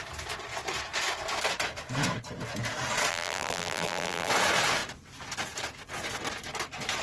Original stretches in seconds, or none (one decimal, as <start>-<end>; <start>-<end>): 0.0-3.1; 4.3-7.0

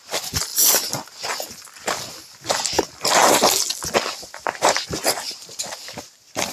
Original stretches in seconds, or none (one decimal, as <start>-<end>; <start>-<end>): 0.0-6.5